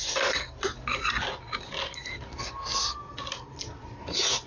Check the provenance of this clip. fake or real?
real